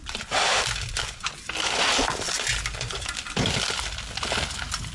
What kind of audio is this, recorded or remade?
recorded